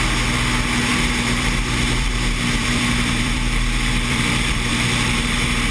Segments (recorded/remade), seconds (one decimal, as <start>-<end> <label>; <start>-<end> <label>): 0.0-0.9 recorded; 0.9-2.1 remade; 2.1-2.6 recorded; 2.6-4.7 remade; 4.7-5.7 recorded